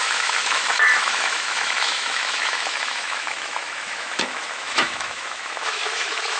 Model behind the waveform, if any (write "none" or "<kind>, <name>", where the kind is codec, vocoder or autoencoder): autoencoder, DAC-VAE